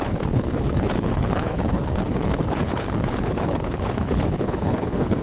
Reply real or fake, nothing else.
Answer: fake